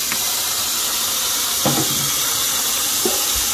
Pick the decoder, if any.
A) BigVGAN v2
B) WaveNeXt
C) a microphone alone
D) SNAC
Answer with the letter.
C